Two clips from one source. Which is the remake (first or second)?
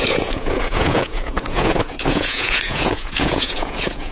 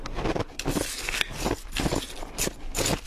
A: first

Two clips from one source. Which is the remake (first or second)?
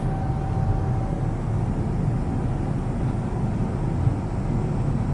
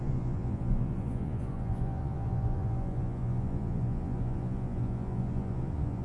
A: second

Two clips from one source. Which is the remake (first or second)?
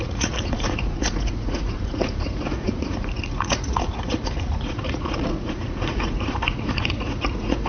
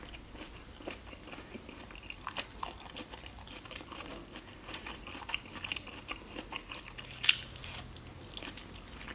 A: first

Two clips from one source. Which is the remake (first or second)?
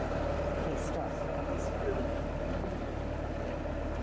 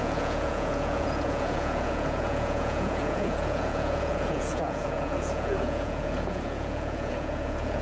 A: second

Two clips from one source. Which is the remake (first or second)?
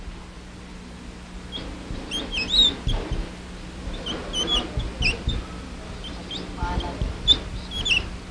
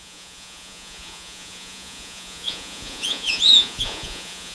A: second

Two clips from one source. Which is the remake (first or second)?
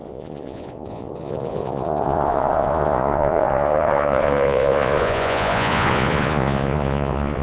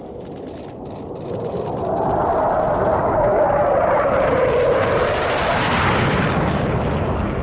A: first